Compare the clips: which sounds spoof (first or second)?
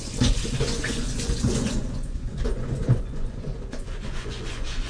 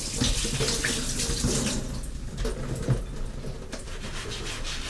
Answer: first